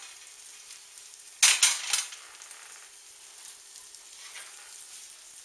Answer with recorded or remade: recorded